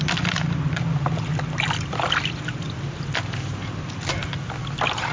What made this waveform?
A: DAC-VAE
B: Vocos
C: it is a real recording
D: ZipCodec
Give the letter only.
C